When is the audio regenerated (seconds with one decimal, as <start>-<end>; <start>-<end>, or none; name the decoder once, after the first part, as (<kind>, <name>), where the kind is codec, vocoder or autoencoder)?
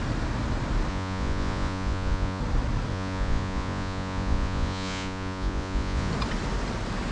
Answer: 0.9-2.4 (vocoder, Vocos); 2.9-6.1